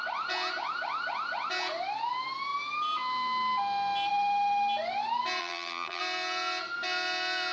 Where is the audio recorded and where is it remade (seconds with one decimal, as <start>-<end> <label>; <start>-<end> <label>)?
0.0-5.4 recorded; 5.4-6.0 remade; 6.0-7.5 recorded